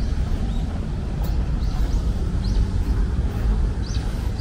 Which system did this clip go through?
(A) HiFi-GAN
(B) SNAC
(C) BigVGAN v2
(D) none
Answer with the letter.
C